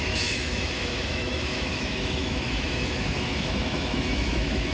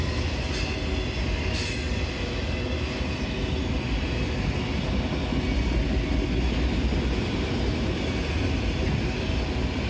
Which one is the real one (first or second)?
second